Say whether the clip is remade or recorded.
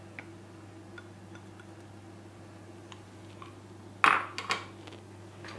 recorded